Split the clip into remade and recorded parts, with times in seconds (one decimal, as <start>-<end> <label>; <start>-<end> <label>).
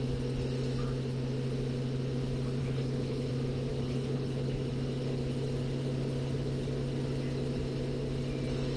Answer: 0.0-2.6 recorded; 2.6-3.3 remade; 3.3-3.7 recorded; 3.7-4.7 remade; 4.7-8.8 recorded